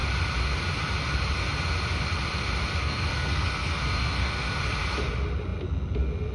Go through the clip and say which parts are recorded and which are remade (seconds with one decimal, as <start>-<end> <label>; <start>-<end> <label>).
0.0-2.8 recorded; 2.8-4.6 remade; 4.6-6.3 recorded